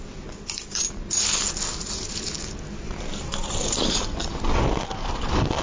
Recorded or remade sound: recorded